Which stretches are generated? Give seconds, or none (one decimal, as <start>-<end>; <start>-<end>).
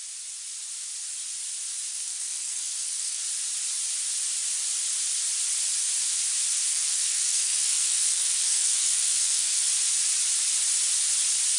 1.9-3.2; 6.7-9.7